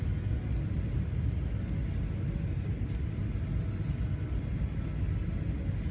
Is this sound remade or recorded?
recorded